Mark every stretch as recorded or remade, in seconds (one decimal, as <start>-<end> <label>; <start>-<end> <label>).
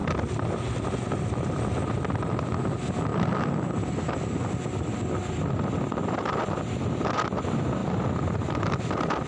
0.0-7.8 recorded; 7.8-8.8 remade; 8.8-9.3 recorded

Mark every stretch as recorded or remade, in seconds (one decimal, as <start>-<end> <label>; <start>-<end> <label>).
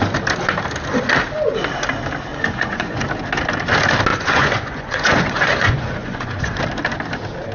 0.0-2.3 recorded; 2.3-3.0 remade; 3.0-4.1 recorded; 4.1-6.6 remade; 6.6-7.5 recorded